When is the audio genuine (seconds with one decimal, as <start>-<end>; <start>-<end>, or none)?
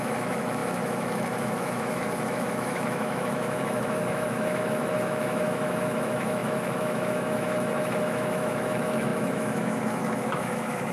none